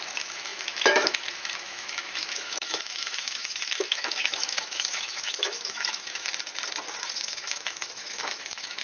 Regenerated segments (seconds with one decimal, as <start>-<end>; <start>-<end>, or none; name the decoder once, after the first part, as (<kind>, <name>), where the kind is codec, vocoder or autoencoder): 0.0-6.3 (autoencoder, DAC-VAE); 7.2-8.8